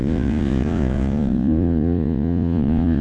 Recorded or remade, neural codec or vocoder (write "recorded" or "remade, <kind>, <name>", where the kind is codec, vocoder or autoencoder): remade, vocoder, Vocos